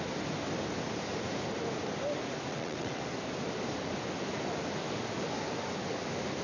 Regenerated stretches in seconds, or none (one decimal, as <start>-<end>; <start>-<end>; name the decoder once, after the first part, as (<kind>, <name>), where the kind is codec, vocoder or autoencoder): 2.5-3.0 (vocoder, WaveNeXt)